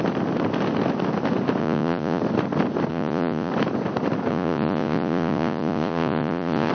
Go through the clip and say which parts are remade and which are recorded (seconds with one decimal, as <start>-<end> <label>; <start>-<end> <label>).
0.0-1.6 recorded; 1.6-2.2 remade; 2.2-2.9 recorded; 2.9-3.5 remade; 3.5-4.3 recorded; 4.3-6.7 remade

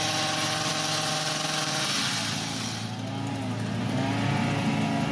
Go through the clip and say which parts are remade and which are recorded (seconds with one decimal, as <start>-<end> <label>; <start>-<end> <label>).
0.0-5.1 recorded